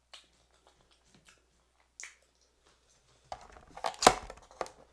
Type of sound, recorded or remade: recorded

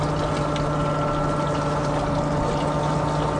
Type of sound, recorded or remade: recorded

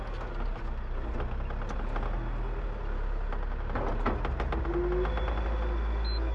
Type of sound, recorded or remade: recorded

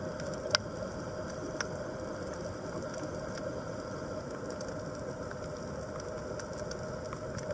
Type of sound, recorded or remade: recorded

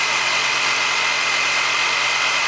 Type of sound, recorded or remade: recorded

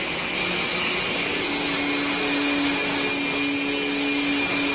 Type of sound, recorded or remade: recorded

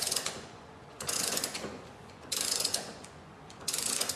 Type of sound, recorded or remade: remade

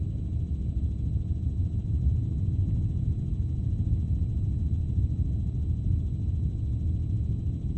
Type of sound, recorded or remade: recorded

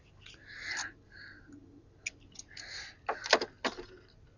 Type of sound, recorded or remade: recorded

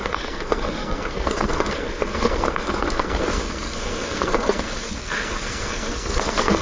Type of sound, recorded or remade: remade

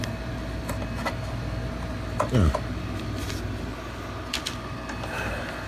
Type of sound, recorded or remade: recorded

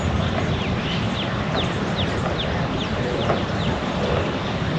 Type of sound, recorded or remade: recorded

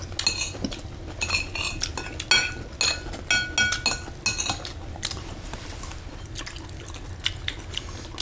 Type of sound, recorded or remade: recorded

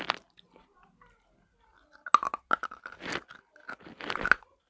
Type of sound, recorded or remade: recorded